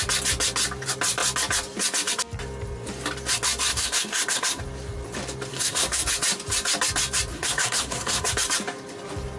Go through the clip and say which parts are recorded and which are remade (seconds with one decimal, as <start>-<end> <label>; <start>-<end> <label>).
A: 0.0-3.7 recorded; 3.7-4.6 remade; 4.6-5.5 recorded; 5.5-6.1 remade; 6.1-7.3 recorded; 7.3-8.3 remade; 8.3-9.4 recorded